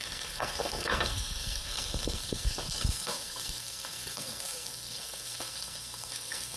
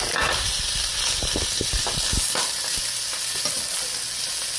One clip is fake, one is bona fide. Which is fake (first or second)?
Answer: first